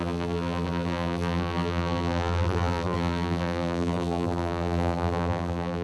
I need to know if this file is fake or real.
fake